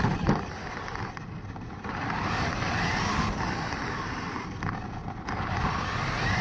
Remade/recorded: recorded